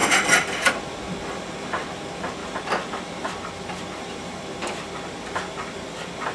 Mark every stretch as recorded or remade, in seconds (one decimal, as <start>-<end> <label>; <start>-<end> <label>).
0.0-2.4 remade; 2.4-3.8 recorded; 3.8-4.3 remade; 4.3-5.6 recorded; 5.6-6.3 remade